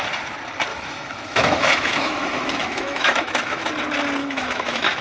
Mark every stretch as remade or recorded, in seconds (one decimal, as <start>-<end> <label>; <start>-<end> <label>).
0.0-0.7 recorded; 0.7-3.7 remade; 3.7-4.2 recorded; 4.2-5.0 remade